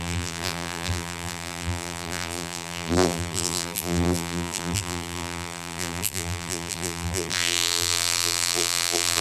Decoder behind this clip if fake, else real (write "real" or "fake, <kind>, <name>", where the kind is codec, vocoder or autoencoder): fake, vocoder, BigVGAN v2